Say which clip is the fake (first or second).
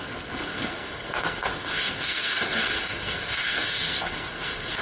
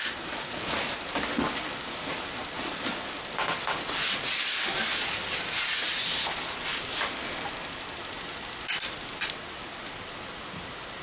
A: first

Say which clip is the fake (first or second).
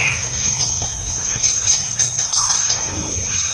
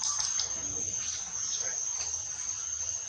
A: first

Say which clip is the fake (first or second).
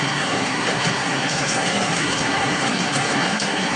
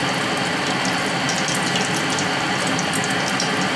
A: first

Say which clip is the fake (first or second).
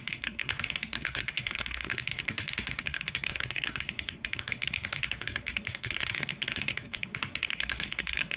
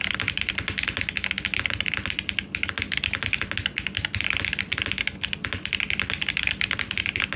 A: first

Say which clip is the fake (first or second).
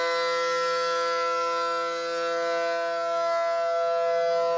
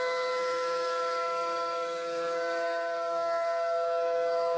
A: second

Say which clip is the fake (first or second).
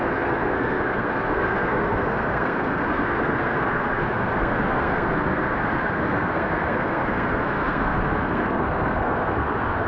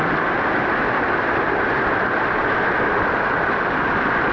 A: first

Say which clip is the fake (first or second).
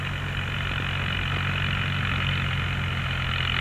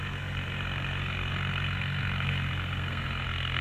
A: second